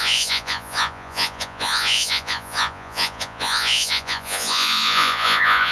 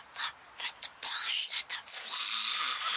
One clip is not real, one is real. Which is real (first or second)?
second